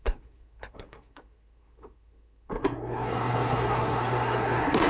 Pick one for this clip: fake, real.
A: fake